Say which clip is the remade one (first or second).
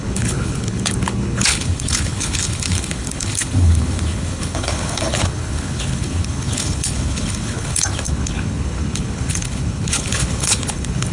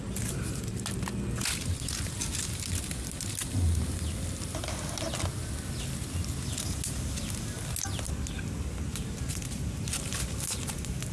first